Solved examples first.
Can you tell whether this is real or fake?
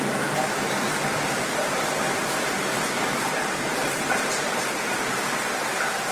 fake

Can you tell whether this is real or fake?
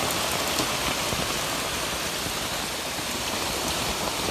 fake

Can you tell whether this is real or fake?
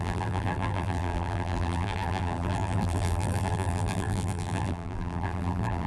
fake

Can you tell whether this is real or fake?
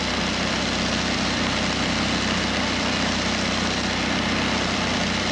fake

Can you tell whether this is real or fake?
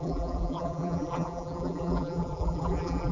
fake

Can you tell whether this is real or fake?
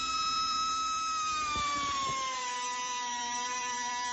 fake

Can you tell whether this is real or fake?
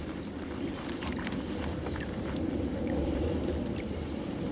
fake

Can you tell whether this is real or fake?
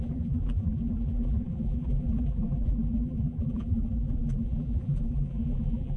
fake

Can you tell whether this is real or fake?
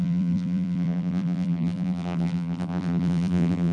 fake